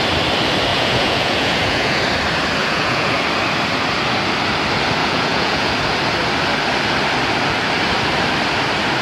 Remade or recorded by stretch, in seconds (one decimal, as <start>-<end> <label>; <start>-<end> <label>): 0.0-0.7 recorded; 0.7-2.0 remade; 2.0-2.6 recorded; 2.6-3.2 remade; 3.2-5.0 recorded; 5.0-5.7 remade; 5.7-9.0 recorded